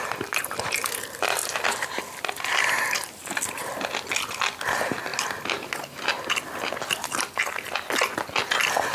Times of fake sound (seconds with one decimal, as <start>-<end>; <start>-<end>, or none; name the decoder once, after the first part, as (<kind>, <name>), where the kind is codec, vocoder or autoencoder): 1.4-2.0 (vocoder, BigVGAN v2); 3.0-3.9

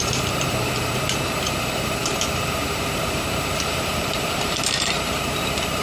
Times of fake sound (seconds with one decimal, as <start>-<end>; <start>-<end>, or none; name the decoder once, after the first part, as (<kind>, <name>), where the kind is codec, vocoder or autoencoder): 0.0-5.8 (vocoder, BigVGAN v2)